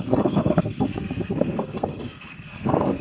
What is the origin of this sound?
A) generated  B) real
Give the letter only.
A